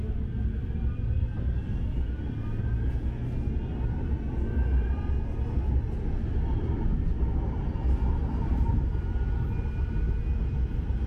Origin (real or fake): real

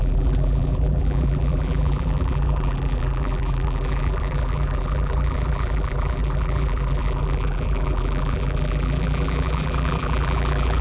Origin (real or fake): fake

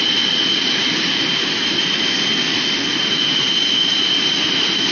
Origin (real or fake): fake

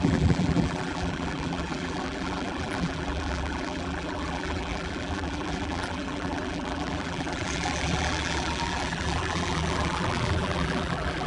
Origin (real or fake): fake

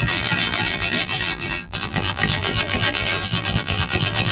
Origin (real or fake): fake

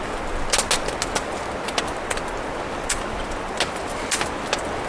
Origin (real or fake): real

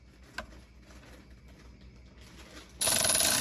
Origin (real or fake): real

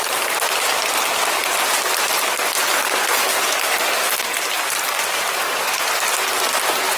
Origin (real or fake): real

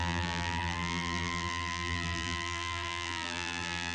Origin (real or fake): fake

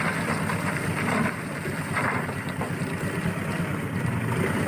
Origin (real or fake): real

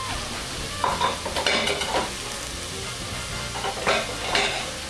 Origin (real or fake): real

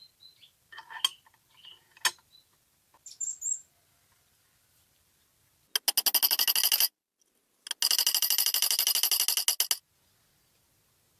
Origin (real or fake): real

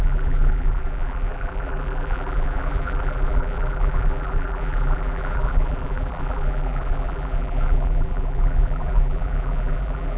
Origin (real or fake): fake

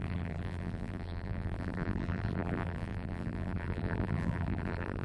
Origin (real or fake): fake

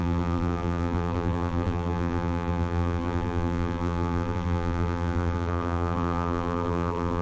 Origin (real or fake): fake